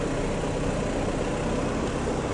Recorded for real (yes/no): yes